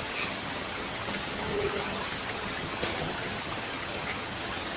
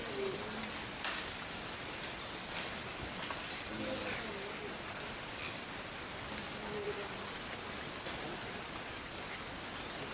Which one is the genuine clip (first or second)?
second